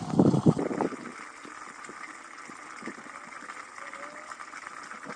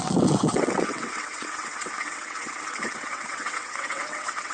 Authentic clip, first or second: first